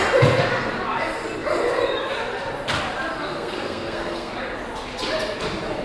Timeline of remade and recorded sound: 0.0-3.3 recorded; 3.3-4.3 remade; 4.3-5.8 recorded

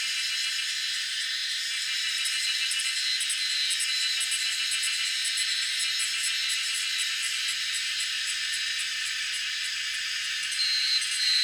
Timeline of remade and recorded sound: 0.0-1.4 recorded; 1.4-2.8 remade; 2.8-6.4 recorded; 6.4-10.1 remade; 10.1-11.4 recorded

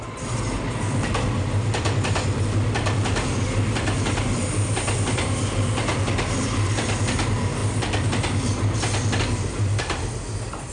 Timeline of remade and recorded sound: 0.0-10.7 recorded

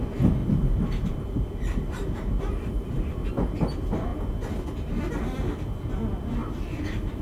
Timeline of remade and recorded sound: 0.0-0.4 recorded; 0.4-3.3 remade; 3.3-6.4 recorded; 6.4-7.2 remade